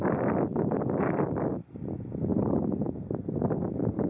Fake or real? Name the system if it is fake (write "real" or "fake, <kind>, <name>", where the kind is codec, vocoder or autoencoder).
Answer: real